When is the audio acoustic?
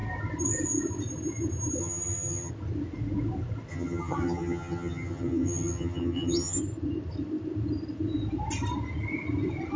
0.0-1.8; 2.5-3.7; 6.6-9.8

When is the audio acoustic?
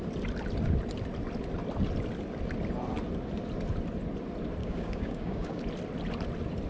0.0-4.6; 5.6-6.7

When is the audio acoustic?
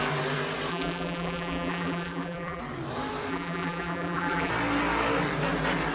0.0-0.7; 2.6-3.3; 4.5-5.9